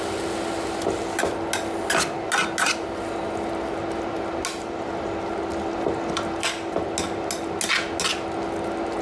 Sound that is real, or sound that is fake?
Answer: real